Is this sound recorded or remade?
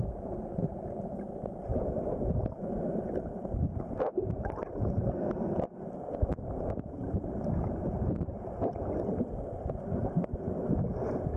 recorded